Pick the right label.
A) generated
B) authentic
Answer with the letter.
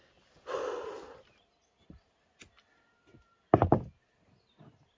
B